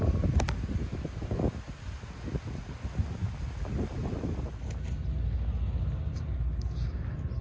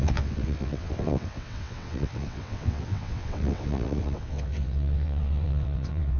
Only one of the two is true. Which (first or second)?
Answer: first